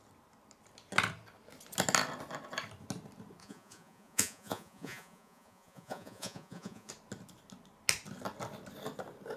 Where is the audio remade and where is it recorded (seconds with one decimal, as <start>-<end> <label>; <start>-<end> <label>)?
0.0-3.4 recorded; 3.4-6.9 remade; 6.9-9.4 recorded